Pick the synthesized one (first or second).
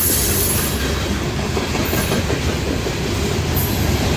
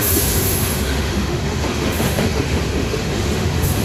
second